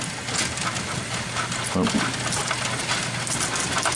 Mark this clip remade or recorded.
recorded